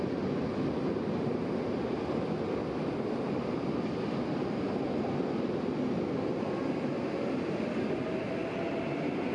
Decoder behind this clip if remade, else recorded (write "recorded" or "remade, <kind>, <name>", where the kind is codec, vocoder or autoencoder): recorded